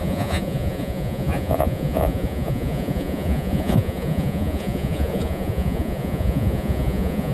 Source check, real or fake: fake